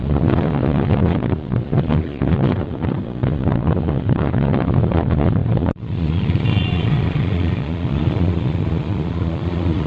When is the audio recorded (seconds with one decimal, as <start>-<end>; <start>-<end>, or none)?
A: none